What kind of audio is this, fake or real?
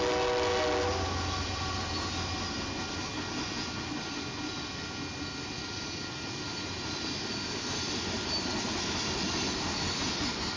real